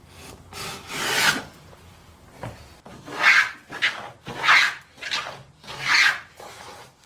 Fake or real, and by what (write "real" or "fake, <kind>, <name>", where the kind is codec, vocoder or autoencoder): real